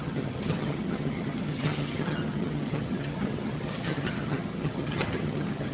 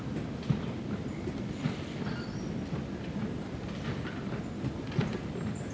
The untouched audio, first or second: second